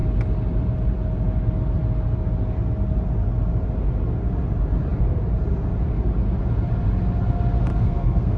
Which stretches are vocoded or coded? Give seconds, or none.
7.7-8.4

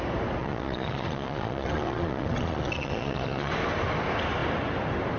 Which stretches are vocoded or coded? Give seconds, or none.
0.4-3.5

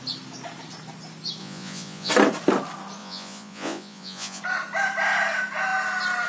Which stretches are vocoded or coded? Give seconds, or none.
1.4-2.1; 3.0-4.4

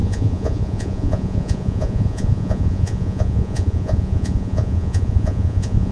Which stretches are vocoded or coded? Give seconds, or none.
0.0-5.9

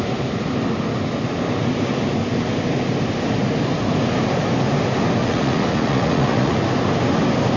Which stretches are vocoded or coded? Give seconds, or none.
5.2-6.6